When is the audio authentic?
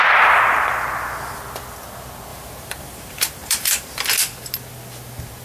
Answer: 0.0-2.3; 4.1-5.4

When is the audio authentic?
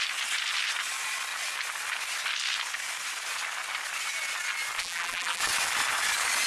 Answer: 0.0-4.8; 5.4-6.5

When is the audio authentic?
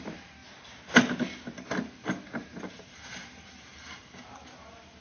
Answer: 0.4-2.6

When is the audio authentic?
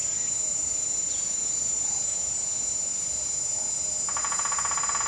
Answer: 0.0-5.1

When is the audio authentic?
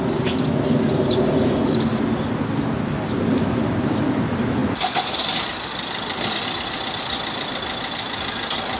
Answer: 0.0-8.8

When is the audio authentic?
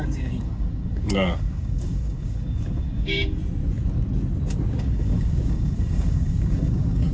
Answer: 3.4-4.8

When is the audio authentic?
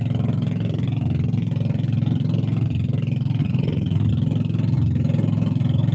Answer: 0.0-3.4; 4.1-5.9